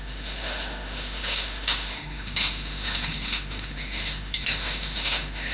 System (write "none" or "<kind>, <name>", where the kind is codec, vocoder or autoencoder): autoencoder, DAC-VAE